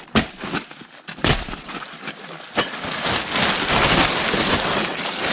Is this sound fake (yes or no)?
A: no